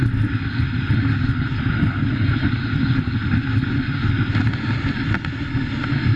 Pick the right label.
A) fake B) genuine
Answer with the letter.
B